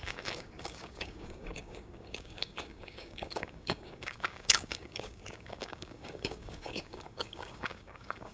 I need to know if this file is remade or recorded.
remade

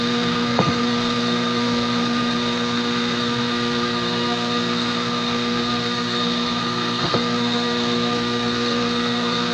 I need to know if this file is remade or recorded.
remade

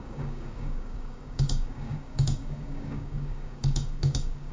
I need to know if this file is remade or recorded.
remade